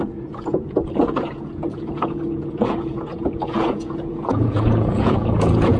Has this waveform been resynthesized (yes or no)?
yes